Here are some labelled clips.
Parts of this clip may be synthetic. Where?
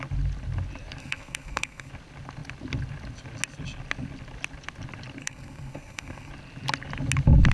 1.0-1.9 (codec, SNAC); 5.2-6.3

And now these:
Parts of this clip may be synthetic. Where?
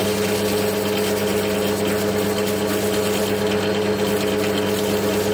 none